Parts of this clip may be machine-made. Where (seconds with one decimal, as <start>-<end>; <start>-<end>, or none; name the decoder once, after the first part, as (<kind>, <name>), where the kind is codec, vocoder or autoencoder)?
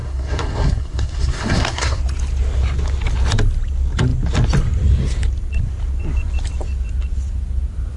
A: 0.0-2.0 (codec, SNAC)